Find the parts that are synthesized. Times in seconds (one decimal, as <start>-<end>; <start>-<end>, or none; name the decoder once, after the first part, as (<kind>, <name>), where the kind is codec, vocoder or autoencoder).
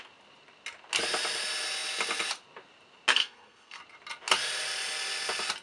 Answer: 3.1-3.8 (codec, SNAC)